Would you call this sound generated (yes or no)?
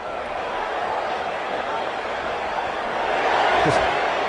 yes